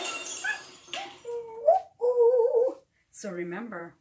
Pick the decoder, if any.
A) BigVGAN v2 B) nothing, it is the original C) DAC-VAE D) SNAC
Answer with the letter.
A